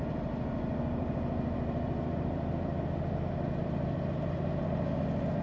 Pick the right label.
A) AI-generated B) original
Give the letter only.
A